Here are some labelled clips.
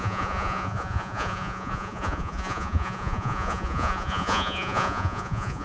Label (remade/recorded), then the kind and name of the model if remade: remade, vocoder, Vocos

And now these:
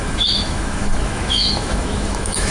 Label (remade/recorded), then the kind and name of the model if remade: remade, autoencoder, DAC-VAE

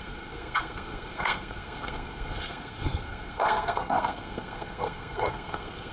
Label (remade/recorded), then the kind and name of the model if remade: remade, codec, SNAC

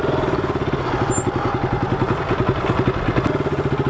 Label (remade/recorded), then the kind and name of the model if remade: recorded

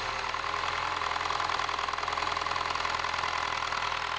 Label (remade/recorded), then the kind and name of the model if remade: recorded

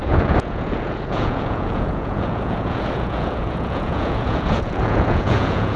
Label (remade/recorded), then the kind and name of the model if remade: remade, vocoder, Vocos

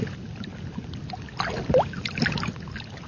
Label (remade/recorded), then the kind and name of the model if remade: recorded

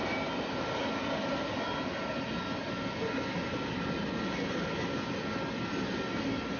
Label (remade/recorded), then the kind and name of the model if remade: recorded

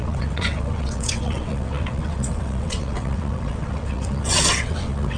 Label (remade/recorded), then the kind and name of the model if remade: remade, vocoder, WaveNeXt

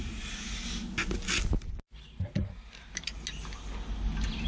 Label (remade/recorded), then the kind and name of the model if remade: recorded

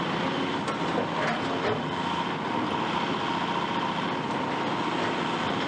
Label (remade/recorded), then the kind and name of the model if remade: recorded